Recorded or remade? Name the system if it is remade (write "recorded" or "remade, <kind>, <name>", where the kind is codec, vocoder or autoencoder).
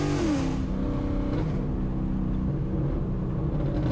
recorded